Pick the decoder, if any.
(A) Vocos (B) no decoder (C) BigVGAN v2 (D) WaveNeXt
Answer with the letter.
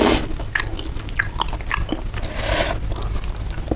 B